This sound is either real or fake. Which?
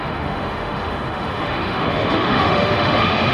fake